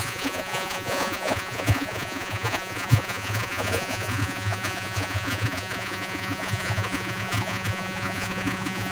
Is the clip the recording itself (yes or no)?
no